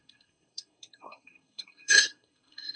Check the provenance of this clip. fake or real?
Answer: fake